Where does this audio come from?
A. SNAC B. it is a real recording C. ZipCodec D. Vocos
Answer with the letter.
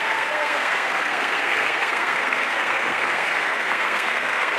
A